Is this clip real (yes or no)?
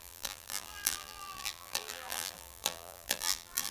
no